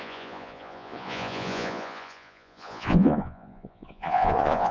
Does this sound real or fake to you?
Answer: fake